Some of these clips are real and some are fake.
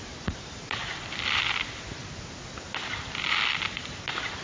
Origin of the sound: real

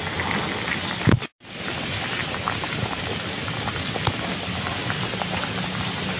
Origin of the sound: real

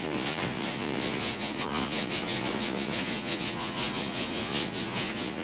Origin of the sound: fake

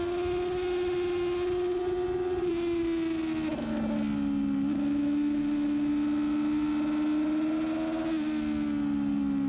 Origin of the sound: real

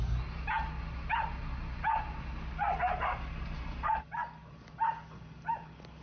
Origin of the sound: real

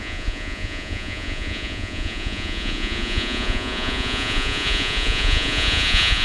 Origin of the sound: fake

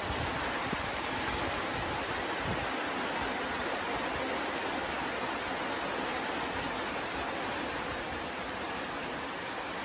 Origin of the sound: real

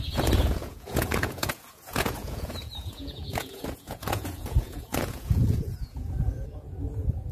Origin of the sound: fake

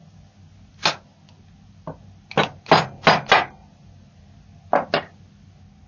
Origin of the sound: real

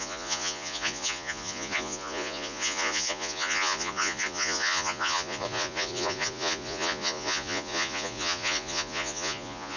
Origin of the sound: fake